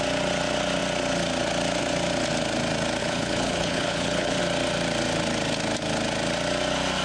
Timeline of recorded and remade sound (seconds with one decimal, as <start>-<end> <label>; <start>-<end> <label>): 0.0-3.0 recorded; 3.0-4.4 remade; 4.4-7.0 recorded